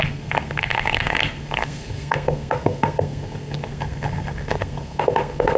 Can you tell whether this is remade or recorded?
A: remade